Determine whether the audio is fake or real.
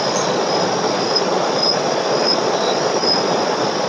fake